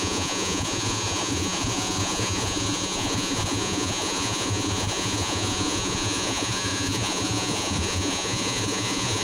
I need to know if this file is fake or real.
fake